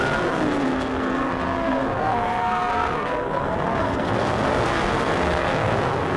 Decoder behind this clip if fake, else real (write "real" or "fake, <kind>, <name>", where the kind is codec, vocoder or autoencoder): fake, codec, SNAC